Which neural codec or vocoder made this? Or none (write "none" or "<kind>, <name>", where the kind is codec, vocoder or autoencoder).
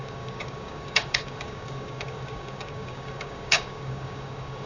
codec, DAC